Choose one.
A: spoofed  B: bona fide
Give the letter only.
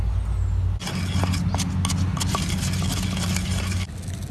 B